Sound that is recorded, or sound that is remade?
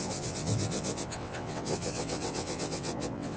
remade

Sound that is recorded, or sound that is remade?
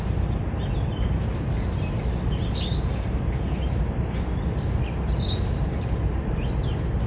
recorded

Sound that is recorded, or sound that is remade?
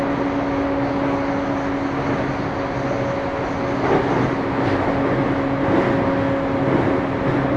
recorded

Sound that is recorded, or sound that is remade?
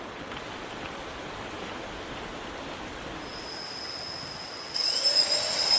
recorded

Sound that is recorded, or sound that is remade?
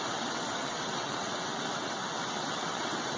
remade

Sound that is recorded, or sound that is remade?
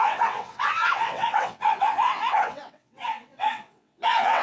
remade